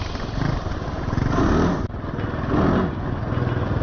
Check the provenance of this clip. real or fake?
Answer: real